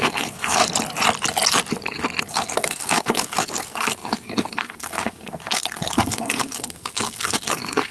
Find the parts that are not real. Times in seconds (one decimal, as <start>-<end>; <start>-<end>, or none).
0.0-0.6; 2.3-7.9